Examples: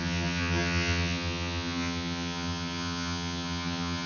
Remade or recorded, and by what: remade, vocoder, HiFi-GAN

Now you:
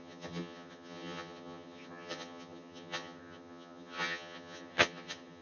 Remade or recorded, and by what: remade, vocoder, HiFi-GAN